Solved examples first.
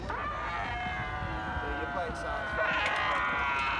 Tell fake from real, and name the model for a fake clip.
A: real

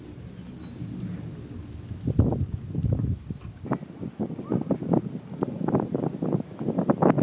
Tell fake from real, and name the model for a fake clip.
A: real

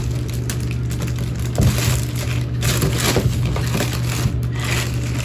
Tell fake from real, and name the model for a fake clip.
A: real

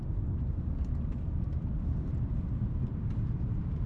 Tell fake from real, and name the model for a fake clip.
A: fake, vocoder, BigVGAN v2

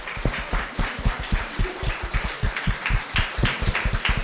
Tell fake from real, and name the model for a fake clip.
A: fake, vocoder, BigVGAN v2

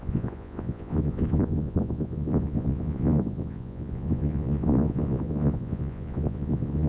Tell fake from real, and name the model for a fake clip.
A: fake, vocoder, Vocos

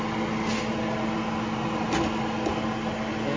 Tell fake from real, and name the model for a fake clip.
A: real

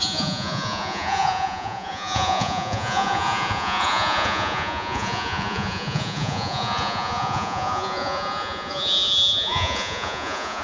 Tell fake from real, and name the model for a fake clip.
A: fake, vocoder, Vocos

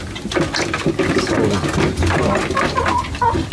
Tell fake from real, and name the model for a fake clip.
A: real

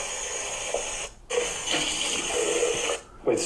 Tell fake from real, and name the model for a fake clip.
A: real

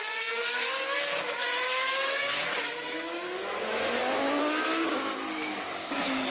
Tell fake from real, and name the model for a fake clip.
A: fake, autoencoder, DAC-VAE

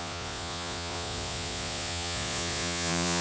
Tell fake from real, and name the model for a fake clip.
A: fake, vocoder, Vocos